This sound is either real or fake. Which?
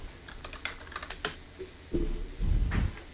real